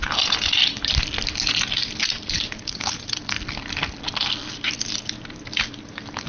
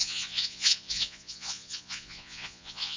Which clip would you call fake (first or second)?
second